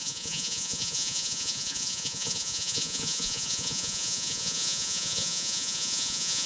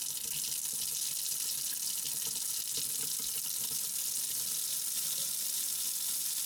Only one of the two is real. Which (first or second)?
second